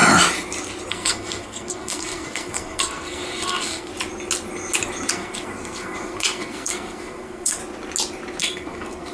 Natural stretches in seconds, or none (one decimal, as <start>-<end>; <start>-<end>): 0.0-0.9; 3.9-5.1; 7.6-8.4